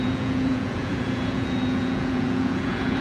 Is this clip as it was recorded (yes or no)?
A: no